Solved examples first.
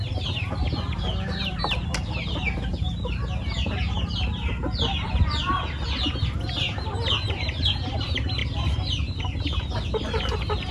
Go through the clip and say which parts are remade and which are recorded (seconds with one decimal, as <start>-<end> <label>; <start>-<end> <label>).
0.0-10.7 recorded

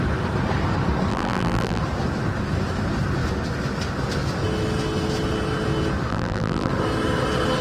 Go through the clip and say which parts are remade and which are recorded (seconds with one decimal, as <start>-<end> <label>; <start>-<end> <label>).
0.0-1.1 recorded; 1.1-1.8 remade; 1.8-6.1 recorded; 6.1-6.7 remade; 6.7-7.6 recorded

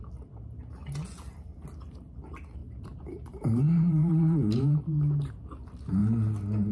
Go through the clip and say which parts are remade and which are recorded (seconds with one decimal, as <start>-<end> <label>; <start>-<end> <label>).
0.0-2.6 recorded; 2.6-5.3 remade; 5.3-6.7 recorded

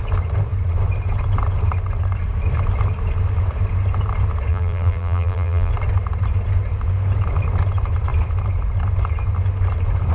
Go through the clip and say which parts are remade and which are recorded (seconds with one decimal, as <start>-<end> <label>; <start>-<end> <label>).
0.0-4.5 recorded; 4.5-5.7 remade; 5.7-10.1 recorded